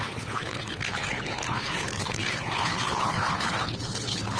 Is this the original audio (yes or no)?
no